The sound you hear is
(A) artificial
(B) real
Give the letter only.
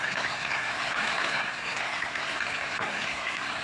A